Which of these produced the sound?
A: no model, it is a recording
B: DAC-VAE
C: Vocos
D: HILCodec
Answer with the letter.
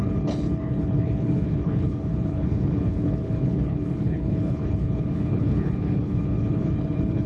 D